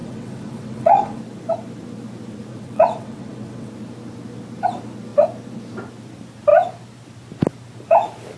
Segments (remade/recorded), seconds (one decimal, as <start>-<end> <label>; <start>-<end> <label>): 0.0-1.2 remade; 1.2-2.5 recorded; 2.5-3.7 remade; 3.7-8.4 recorded